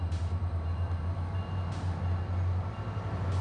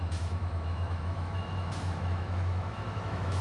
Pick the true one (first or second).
first